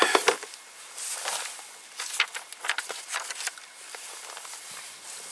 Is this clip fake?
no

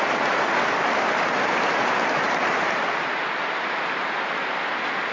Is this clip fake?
no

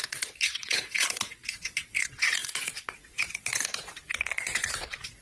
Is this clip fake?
yes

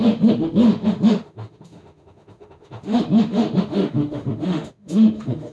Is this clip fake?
yes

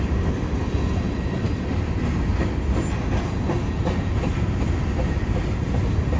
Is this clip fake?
no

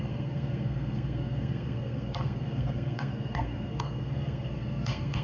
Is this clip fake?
yes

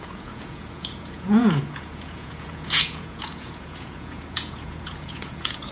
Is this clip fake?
yes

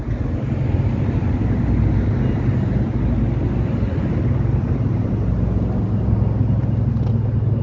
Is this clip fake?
no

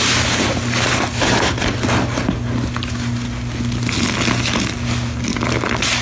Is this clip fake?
no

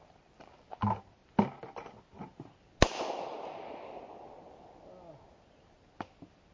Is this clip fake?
no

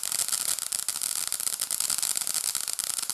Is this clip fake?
no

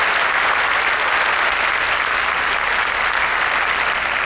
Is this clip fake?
no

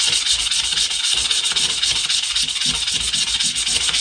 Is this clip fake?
no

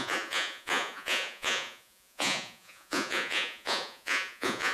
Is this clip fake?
yes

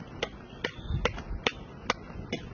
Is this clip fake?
no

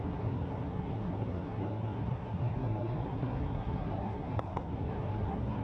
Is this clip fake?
yes